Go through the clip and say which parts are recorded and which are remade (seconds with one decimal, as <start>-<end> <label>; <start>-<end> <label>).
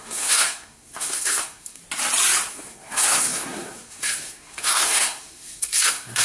0.0-1.8 remade; 1.8-2.5 recorded; 2.5-6.2 remade